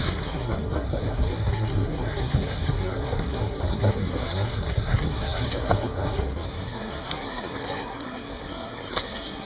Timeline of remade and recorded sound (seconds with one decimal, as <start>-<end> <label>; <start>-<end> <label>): 0.0-9.5 remade